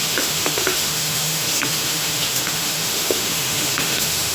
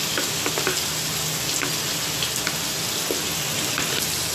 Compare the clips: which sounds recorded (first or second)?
second